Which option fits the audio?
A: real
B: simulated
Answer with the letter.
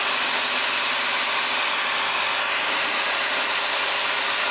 A